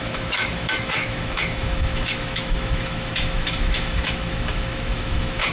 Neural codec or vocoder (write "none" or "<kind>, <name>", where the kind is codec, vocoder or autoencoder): autoencoder, DAC-VAE